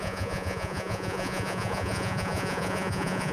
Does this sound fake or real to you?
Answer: fake